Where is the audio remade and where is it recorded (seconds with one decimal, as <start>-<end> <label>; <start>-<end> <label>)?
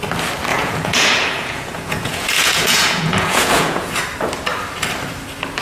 0.0-0.5 recorded; 0.5-3.9 remade; 3.9-5.6 recorded